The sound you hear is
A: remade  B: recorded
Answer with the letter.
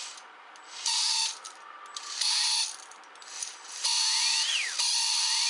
B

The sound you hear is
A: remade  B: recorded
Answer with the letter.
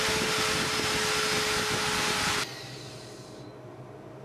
B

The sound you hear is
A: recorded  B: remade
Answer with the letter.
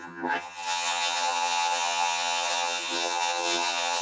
B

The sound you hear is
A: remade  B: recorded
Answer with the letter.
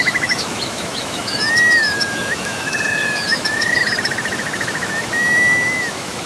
A